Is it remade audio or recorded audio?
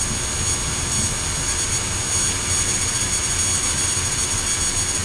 recorded